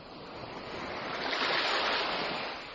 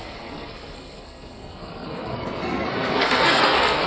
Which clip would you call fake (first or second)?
second